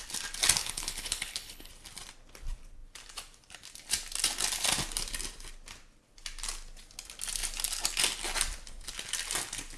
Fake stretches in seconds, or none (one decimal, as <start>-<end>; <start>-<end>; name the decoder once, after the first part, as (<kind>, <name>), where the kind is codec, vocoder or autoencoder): 0.6-1.7 (codec, HILCodec)